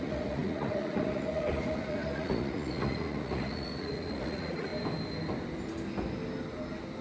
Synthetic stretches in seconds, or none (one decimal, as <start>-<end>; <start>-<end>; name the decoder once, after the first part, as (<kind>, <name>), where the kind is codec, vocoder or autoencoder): 0.0-4.7 (vocoder, Vocos)